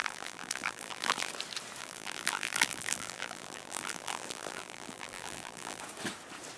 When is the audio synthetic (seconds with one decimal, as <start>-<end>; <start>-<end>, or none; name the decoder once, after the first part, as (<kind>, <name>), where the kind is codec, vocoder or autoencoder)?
0.0-1.3 (vocoder, BigVGAN v2); 1.8-5.8